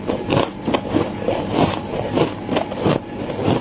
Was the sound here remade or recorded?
recorded